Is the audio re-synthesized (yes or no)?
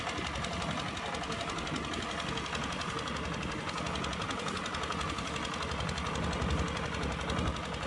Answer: no